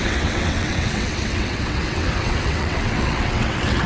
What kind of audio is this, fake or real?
fake